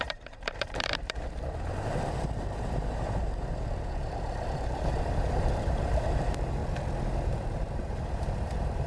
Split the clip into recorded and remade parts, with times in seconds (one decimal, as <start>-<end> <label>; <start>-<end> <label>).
0.0-6.6 remade; 6.6-7.1 recorded; 7.1-8.9 remade